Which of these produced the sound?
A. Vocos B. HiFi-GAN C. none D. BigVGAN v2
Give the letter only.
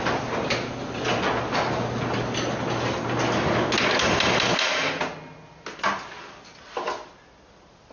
C